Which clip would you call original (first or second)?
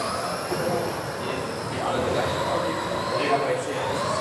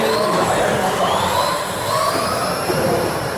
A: first